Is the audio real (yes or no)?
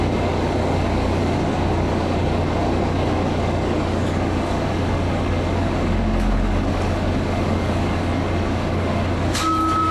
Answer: no